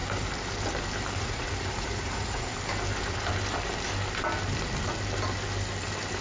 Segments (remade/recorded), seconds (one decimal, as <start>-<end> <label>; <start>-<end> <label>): 0.0-1.2 recorded; 1.2-2.5 remade; 2.5-6.2 recorded